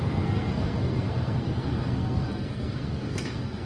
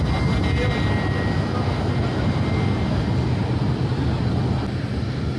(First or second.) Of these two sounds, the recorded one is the second